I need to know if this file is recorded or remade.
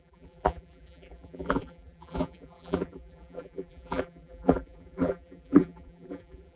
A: remade